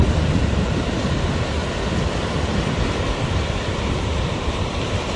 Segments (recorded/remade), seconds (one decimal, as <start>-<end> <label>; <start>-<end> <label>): 0.0-5.2 recorded